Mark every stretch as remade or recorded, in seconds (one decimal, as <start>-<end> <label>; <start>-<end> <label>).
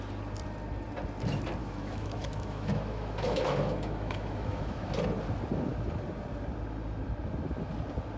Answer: 0.0-1.6 recorded; 1.6-4.9 remade; 4.9-8.2 recorded